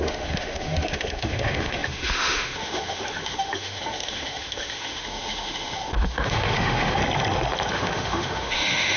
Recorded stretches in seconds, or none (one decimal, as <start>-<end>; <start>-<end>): 7.0-7.7